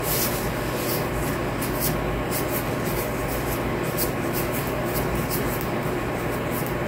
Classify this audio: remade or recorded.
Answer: recorded